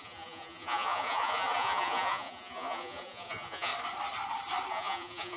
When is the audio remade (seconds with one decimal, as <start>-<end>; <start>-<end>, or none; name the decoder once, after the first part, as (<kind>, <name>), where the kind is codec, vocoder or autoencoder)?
0.0-3.7 (vocoder, Vocos); 4.7-5.4